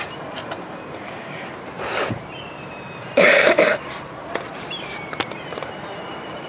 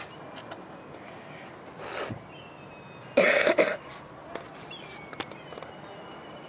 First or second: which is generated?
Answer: first